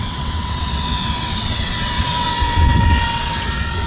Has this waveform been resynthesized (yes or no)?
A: yes